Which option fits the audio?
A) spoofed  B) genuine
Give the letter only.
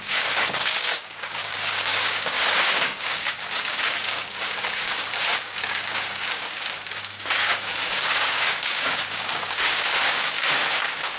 A